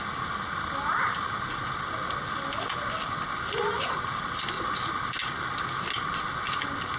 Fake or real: real